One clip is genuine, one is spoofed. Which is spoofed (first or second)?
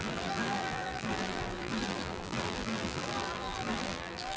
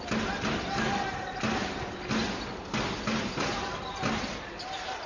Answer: first